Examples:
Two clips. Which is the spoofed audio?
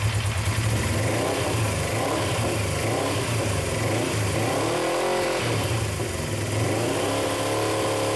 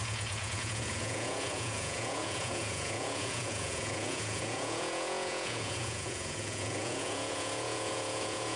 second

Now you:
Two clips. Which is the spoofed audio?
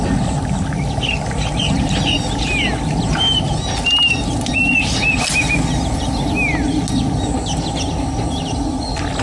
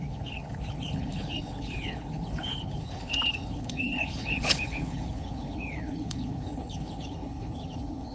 second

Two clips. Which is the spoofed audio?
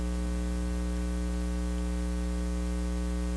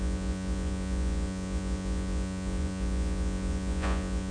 second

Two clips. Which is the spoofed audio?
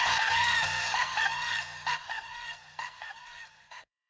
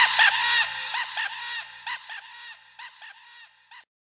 first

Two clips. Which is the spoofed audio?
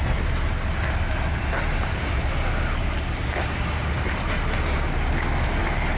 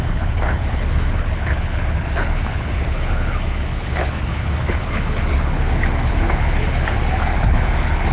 second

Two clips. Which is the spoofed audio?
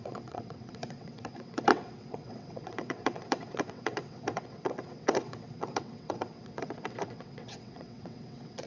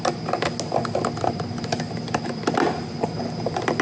first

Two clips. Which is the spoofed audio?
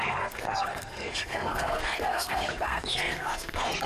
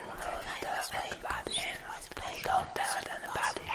first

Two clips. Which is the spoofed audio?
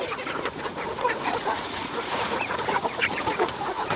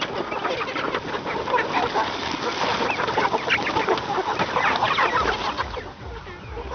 first